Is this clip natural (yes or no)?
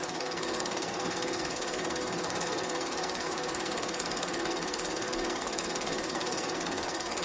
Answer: no